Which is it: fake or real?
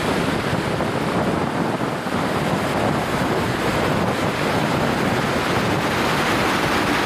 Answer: real